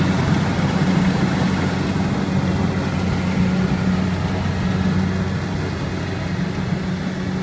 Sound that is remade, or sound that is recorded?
recorded